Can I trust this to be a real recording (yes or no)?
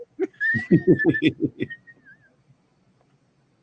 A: yes